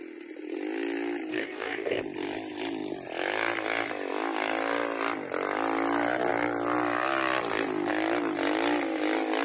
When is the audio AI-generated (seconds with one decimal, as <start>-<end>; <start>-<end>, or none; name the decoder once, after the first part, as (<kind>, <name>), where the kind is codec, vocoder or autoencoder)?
1.3-2.0 (codec, DAC)